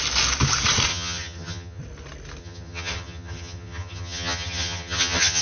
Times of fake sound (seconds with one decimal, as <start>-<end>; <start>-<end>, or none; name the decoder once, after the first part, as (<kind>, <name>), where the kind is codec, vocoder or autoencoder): 0.9-1.8 (vocoder, HiFi-GAN); 2.4-5.4